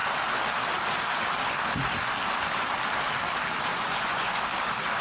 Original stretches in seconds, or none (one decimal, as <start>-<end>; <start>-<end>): 0.0-3.7; 4.4-5.0